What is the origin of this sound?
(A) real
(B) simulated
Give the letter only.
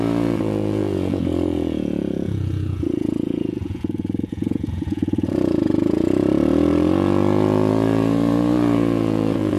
B